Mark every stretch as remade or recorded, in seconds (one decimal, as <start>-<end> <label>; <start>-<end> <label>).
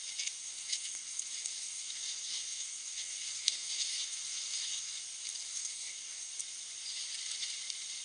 0.0-0.4 recorded; 0.4-5.0 remade; 5.0-5.5 recorded; 5.5-6.3 remade; 6.3-8.0 recorded